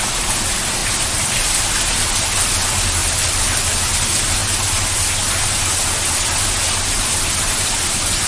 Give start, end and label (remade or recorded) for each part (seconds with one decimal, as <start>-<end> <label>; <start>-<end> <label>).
0.0-0.8 recorded; 0.8-1.6 remade; 1.6-3.0 recorded; 3.0-3.7 remade; 3.7-8.3 recorded